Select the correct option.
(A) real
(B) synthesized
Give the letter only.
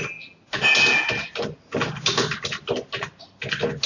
A